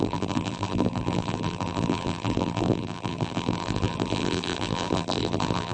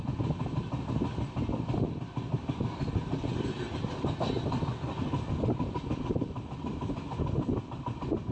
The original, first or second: second